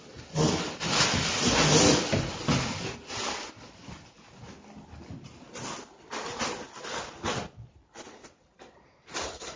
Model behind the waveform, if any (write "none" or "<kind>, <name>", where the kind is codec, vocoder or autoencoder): none